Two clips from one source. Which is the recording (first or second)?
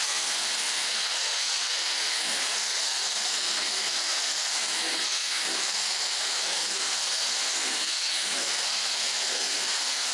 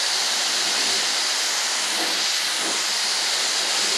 second